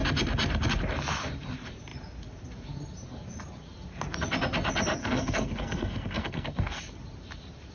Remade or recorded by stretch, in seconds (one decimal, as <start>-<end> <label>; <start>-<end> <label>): 0.0-5.0 recorded; 5.0-6.8 remade; 6.8-7.7 recorded